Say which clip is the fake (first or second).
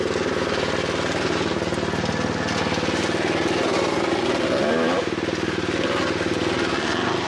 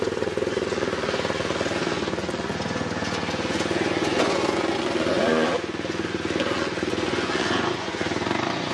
second